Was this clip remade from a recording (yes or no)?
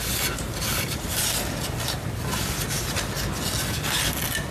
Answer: no